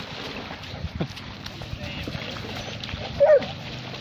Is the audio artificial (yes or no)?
no